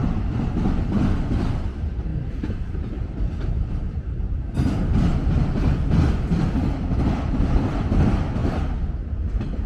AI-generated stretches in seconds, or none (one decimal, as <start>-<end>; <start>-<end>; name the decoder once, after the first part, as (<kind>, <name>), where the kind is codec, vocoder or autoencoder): 2.1-5.0 (vocoder, BigVGAN v2)